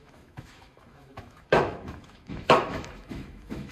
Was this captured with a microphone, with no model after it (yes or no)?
no